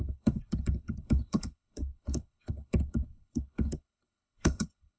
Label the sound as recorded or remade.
remade